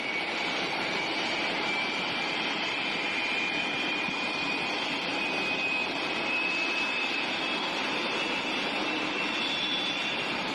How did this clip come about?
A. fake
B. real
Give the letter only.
A